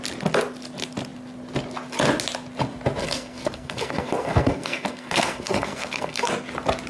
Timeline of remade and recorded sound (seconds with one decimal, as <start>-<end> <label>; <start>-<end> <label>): 0.0-3.0 recorded; 3.0-6.3 remade; 6.3-6.9 recorded